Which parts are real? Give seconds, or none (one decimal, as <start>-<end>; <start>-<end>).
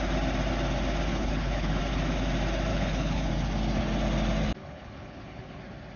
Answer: 0.0-1.1; 1.8-2.7; 3.3-4.6; 5.6-6.0